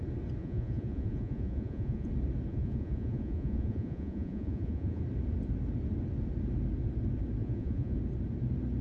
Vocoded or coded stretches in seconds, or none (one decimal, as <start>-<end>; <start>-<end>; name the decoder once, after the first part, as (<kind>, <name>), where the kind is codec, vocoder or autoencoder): 0.4-2.1 (vocoder, Vocos); 2.5-5.0; 7.4-8.0